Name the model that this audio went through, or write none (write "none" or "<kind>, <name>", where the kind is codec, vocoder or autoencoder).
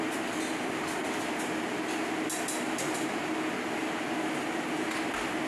none